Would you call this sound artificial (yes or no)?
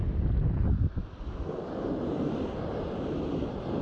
no